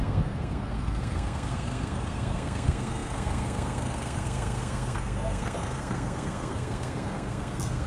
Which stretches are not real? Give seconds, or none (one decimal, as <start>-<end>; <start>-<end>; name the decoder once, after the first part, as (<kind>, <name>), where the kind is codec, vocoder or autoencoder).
0.0-7.9 (codec, SNAC)